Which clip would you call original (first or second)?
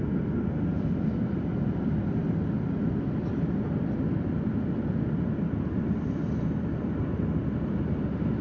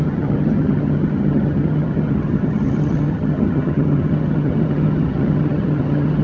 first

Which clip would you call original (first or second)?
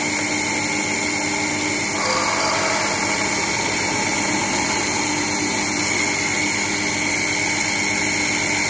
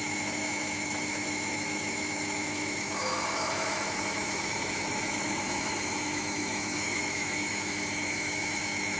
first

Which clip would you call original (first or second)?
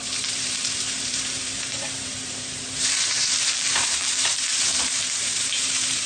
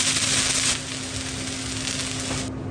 second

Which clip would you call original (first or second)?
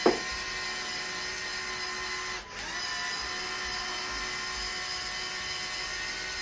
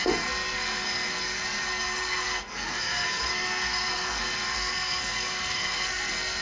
first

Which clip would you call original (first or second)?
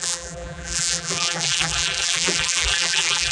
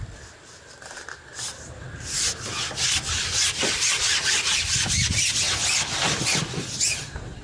second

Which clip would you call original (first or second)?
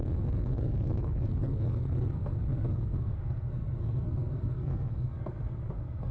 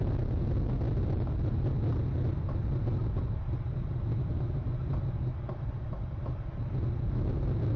second